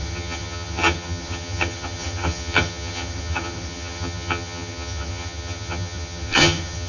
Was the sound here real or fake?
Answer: fake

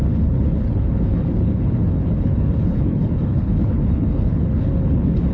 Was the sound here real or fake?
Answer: fake